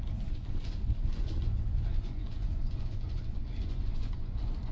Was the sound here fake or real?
fake